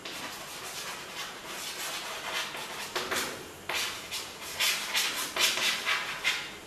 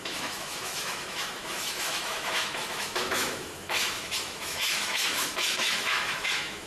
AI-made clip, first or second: second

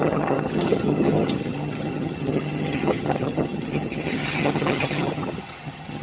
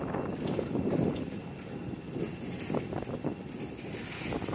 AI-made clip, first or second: first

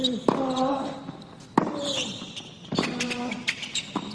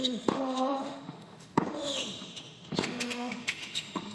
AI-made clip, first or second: second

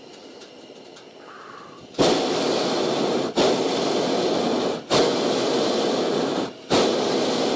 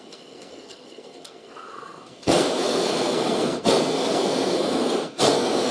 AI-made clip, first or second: second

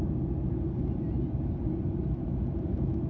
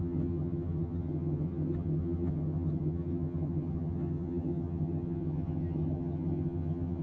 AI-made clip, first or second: second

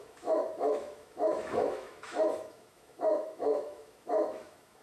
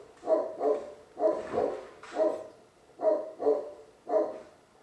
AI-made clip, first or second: first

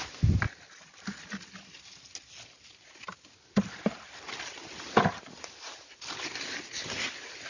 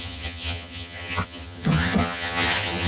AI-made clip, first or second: second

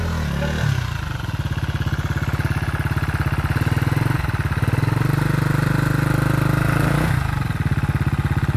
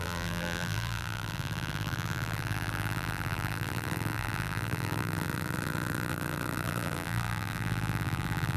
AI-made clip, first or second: second